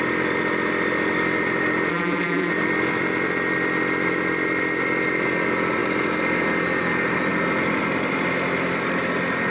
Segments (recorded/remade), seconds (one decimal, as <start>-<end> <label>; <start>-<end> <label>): 0.0-1.9 recorded; 1.9-2.5 remade; 2.5-9.5 recorded